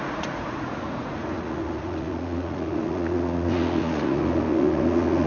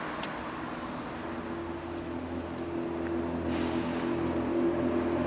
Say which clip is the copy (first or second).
first